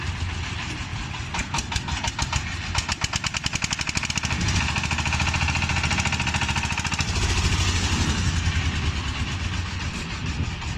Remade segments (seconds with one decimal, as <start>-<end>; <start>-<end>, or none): none